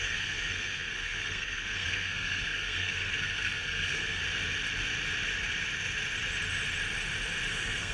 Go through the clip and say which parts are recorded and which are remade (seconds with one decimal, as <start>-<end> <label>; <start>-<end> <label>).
0.0-4.2 remade; 4.2-7.5 recorded; 7.5-7.9 remade